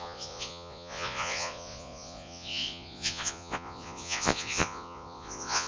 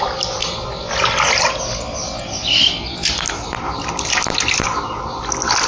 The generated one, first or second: first